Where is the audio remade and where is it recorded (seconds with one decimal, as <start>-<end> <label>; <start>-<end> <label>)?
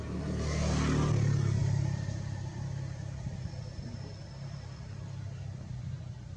0.0-1.6 recorded; 1.6-5.4 remade; 5.4-6.4 recorded